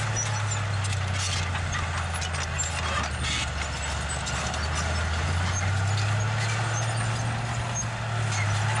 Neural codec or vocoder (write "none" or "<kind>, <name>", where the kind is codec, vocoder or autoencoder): none